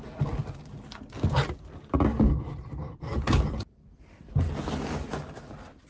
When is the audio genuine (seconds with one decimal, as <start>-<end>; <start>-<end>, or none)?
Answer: 0.0-5.9